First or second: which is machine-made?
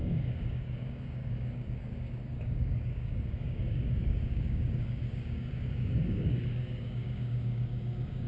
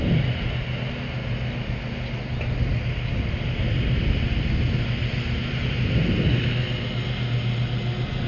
first